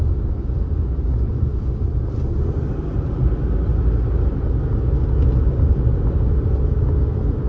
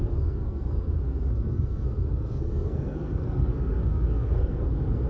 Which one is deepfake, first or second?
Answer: second